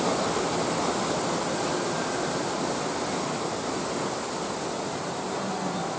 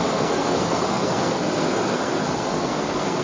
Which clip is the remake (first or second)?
second